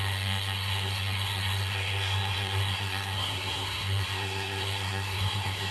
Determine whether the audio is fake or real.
fake